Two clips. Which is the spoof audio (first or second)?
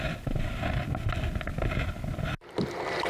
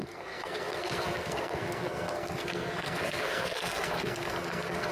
second